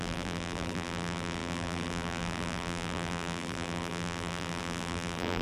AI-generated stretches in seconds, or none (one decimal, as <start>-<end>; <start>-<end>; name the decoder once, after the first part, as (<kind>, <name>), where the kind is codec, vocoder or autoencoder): 0.0-5.4 (vocoder, BigVGAN v2)